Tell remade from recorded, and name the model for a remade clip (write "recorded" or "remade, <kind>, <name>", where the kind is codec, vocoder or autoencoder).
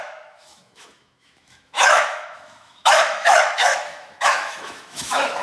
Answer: remade, autoencoder, DAC-VAE